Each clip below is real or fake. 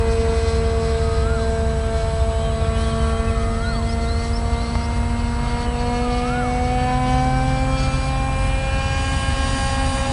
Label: real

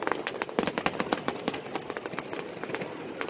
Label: real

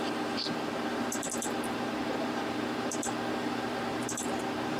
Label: fake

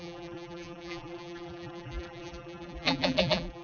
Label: fake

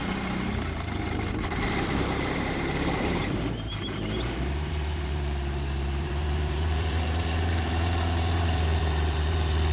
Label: fake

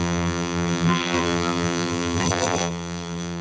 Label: fake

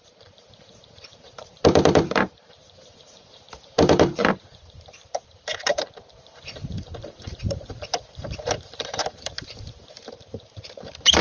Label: fake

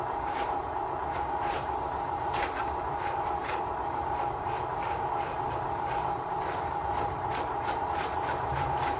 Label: fake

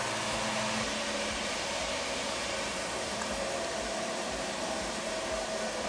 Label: fake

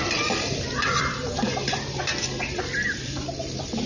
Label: fake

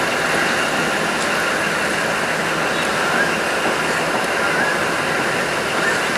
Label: real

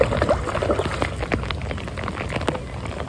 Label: real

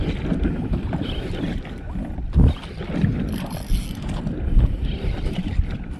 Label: real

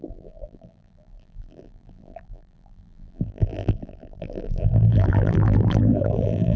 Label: fake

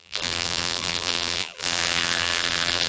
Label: fake